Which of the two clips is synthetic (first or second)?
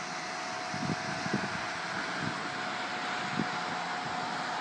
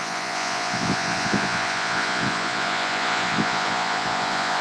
second